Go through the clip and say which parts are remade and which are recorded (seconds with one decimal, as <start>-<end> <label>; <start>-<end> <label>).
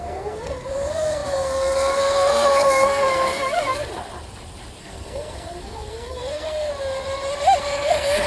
0.0-3.9 remade; 3.9-4.8 recorded; 4.8-6.7 remade; 6.7-7.6 recorded; 7.6-8.3 remade